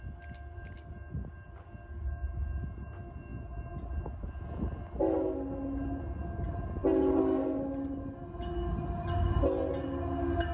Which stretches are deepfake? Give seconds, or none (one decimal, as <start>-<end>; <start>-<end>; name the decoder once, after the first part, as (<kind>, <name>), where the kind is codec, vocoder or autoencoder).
none